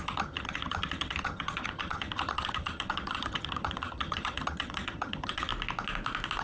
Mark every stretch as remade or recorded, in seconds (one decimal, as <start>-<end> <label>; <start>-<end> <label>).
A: 0.0-5.5 remade; 5.5-6.4 recorded